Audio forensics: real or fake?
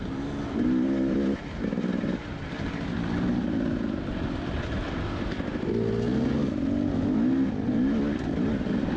real